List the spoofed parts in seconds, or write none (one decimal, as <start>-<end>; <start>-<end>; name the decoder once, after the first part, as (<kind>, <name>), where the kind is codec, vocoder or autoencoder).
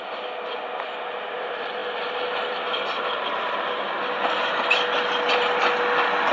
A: none